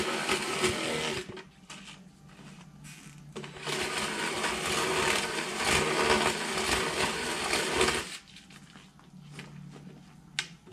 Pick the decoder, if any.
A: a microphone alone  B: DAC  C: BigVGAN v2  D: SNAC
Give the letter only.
A